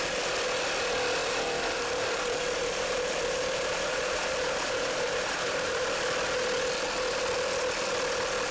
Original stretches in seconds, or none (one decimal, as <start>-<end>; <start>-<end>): 0.0-1.2; 5.9-8.5